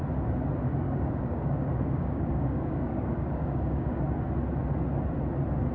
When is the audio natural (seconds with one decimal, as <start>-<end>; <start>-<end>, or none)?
0.0-0.7; 4.1-5.7